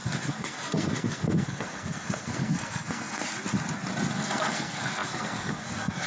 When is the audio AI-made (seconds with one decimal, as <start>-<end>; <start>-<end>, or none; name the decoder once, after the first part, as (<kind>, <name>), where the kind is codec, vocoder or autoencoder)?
0.0-3.2 (codec, SNAC); 4.1-6.1